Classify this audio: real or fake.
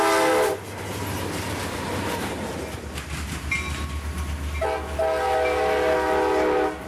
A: real